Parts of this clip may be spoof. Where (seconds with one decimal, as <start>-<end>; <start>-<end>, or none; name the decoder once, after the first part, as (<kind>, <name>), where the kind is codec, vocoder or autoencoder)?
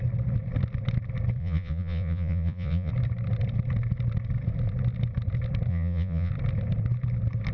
1.4-2.9 (vocoder, Vocos); 5.7-6.3